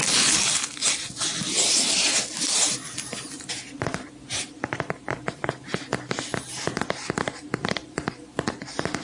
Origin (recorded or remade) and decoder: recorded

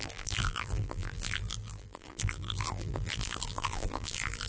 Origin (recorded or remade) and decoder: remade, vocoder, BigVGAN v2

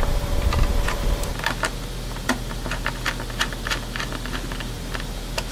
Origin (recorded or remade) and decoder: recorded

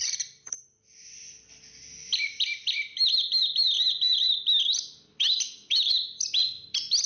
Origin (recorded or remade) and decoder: remade, vocoder, BigVGAN v2